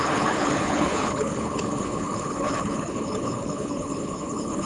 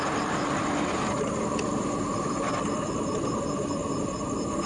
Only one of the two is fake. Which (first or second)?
first